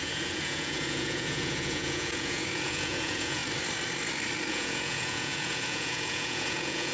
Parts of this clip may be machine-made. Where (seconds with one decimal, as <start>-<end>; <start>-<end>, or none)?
0.0-3.4; 4.5-6.9